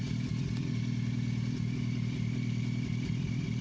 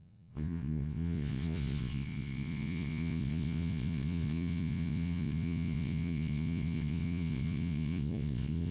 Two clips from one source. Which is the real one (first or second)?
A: first